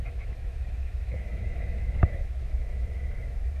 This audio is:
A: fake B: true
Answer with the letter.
A